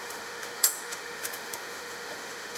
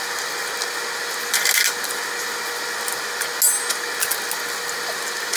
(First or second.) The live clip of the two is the second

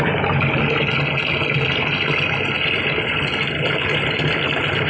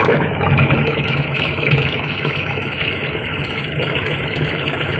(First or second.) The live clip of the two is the first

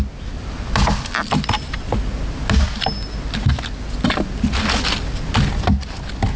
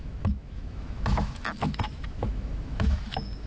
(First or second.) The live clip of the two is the first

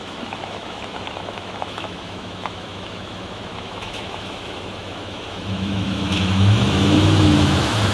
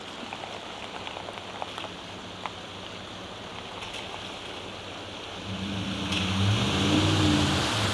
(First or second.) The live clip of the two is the second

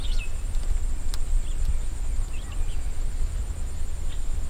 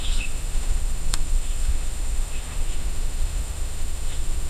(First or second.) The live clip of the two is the first